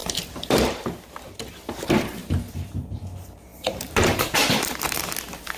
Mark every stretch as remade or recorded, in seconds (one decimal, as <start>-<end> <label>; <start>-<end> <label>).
0.0-2.2 recorded; 2.2-3.0 remade; 3.0-3.5 recorded; 3.5-5.1 remade; 5.1-5.6 recorded